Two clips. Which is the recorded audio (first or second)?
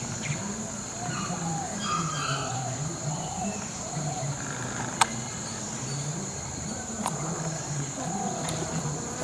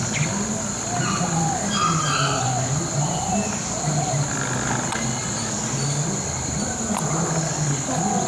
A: second